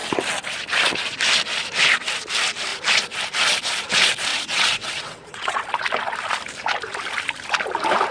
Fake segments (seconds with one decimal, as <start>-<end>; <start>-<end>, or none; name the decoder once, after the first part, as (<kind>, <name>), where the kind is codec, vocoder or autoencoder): 4.3-5.6 (vocoder, WaveNeXt)